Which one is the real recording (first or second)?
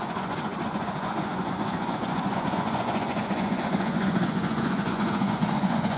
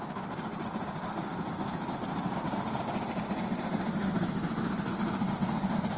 second